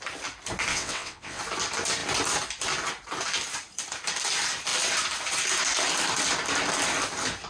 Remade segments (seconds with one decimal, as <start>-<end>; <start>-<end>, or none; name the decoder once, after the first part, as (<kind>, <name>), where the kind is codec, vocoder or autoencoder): 0.7-1.4 (vocoder, WaveNeXt)